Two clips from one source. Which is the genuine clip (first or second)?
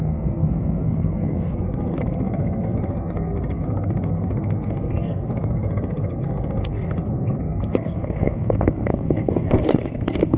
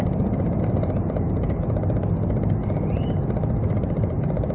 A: second